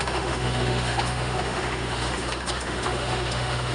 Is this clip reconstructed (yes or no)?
yes